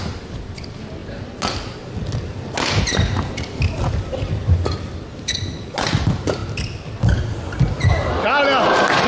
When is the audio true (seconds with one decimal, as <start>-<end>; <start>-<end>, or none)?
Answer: 0.0-9.1